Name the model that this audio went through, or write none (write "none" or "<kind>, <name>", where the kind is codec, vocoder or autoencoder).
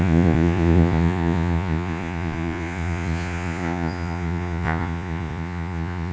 vocoder, Vocos